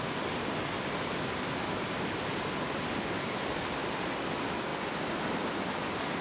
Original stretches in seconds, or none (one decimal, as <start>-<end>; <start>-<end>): 0.0-6.2